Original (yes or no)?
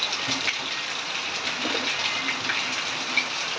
yes